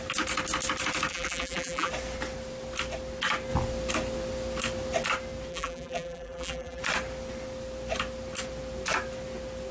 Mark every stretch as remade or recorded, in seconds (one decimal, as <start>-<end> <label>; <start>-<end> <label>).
0.0-1.1 recorded; 1.1-1.9 remade; 1.9-5.5 recorded; 5.5-6.8 remade; 6.8-9.7 recorded